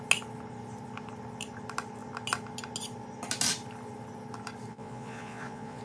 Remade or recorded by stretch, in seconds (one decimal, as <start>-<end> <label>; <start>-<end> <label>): 0.0-4.7 recorded; 4.7-5.8 remade